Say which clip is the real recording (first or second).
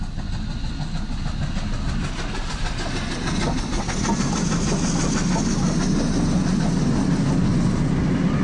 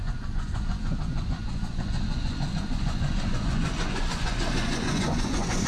first